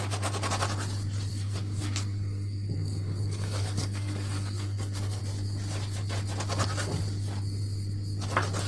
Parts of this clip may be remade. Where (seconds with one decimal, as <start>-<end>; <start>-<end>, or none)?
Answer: 1.3-5.2